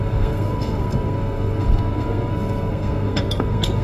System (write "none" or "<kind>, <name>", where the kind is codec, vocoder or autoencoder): codec, SNAC